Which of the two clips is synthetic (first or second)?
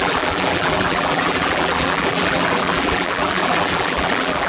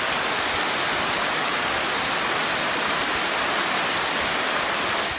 first